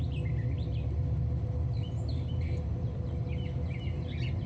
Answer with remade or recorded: recorded